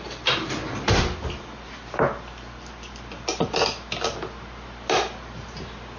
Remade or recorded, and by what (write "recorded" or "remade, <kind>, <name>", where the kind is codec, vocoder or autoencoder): recorded